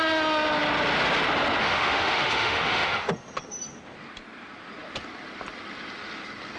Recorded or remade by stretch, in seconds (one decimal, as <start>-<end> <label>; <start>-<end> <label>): 0.0-1.6 recorded; 1.6-3.1 remade; 3.1-6.6 recorded